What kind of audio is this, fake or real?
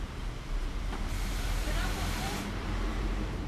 fake